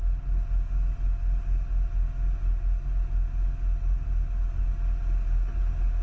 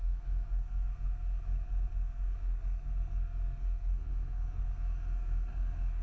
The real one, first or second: first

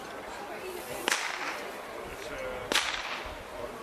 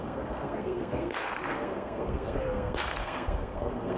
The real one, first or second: first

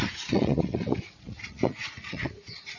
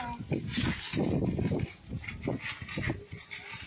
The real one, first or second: second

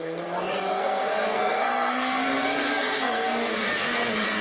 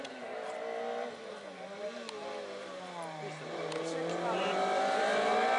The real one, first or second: second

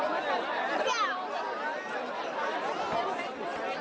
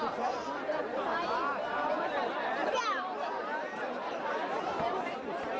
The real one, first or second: first